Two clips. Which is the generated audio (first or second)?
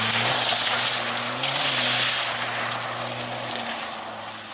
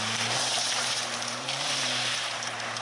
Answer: second